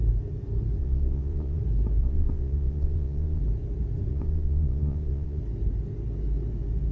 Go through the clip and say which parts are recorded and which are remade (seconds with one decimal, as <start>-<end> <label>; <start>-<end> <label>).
0.0-0.8 recorded; 0.8-1.6 remade; 1.6-2.0 recorded; 2.0-3.4 remade; 3.4-4.1 recorded; 4.1-5.4 remade; 5.4-6.9 recorded